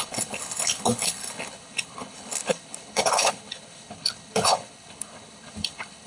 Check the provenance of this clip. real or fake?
fake